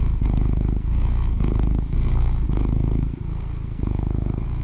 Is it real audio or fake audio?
fake